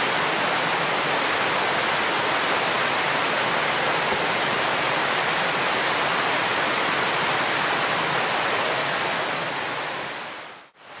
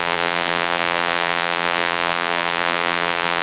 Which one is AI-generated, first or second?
second